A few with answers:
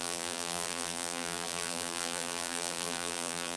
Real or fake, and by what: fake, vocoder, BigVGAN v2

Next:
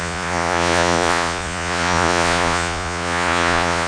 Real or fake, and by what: fake, vocoder, Vocos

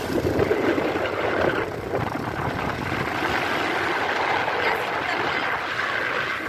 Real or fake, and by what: real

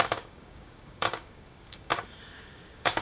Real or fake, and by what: fake, codec, DAC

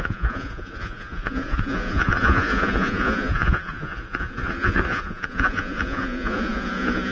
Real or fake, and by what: fake, vocoder, Vocos